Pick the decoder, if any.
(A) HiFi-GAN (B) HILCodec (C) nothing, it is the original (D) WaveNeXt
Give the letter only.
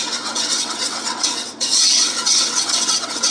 D